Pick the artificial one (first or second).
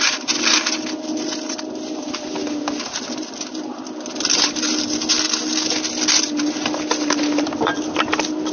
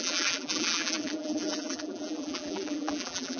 second